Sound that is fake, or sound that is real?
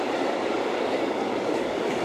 fake